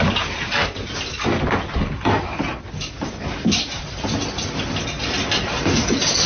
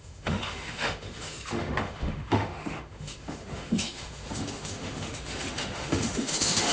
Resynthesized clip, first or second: second